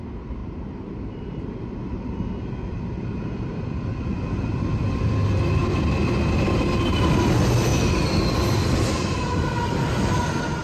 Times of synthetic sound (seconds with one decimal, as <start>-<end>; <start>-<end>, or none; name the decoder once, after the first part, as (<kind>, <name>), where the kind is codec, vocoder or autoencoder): 0.4-1.5 (vocoder, BigVGAN v2); 5.6-7.0